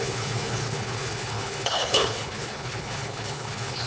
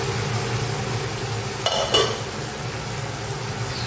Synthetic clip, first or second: first